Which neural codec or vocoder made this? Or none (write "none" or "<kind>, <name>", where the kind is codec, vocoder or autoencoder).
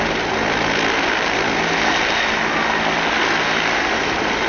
none